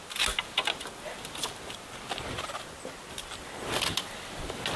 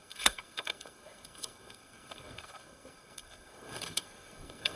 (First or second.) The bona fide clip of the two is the first